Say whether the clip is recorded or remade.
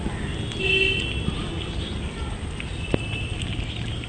recorded